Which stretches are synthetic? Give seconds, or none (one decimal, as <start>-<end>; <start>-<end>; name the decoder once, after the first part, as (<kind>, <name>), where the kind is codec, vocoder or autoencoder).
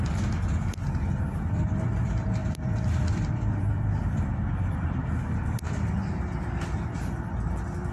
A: 2.4-4.7 (vocoder, BigVGAN v2)